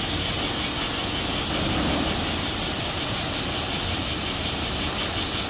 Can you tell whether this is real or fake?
real